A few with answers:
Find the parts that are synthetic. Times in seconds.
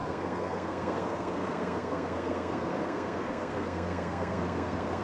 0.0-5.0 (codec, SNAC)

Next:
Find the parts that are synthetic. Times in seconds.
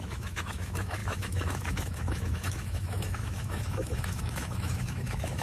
0.0-5.4 (autoencoder, DAC-VAE)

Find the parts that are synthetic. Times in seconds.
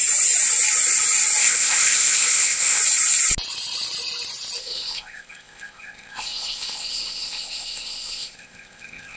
1.4-2.8 (codec, ZipCodec); 4.6-9.2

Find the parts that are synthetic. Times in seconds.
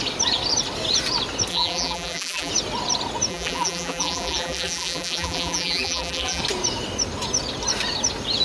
1.5-2.5 (vocoder, BigVGAN v2); 3.3-6.4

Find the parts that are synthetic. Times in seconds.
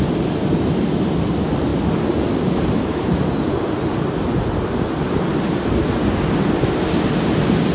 none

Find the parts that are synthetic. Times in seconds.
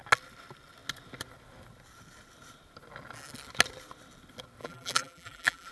4.6-5.7 (vocoder, BigVGAN v2)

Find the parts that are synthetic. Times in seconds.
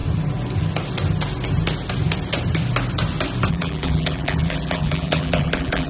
3.5-5.9 (vocoder, BigVGAN v2)